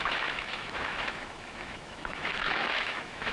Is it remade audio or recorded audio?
remade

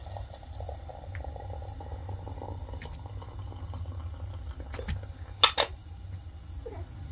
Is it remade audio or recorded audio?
recorded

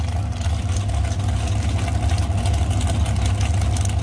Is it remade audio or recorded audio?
recorded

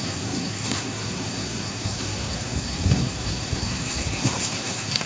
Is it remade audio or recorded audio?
remade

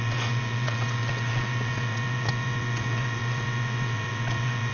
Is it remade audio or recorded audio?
remade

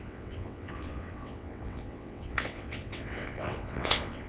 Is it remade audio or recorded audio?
remade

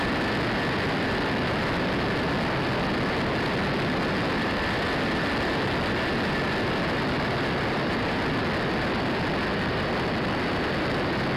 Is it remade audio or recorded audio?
recorded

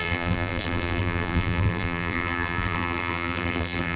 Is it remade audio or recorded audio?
remade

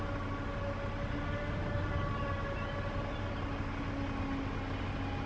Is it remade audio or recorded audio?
recorded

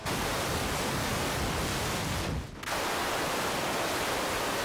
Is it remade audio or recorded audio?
recorded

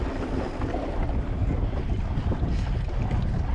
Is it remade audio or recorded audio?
recorded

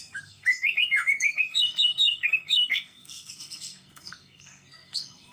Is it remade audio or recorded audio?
remade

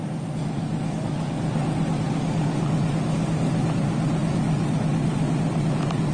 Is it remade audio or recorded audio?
recorded